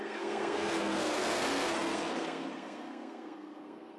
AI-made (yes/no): yes